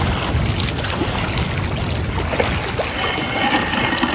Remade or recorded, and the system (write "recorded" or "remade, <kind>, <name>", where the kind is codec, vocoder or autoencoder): recorded